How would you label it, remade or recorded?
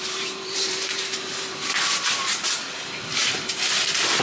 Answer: remade